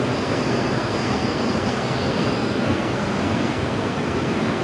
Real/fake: fake